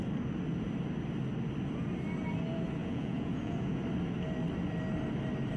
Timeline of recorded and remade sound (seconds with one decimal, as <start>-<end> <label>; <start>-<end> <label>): 0.0-2.8 recorded; 2.8-3.8 remade; 3.8-5.6 recorded